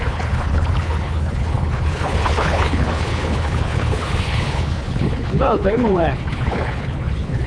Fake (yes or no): yes